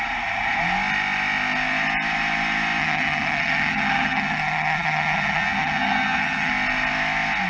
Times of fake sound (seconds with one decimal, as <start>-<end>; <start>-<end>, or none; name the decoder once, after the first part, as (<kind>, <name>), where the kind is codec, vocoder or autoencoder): 2.8-6.5 (vocoder, HiFi-GAN)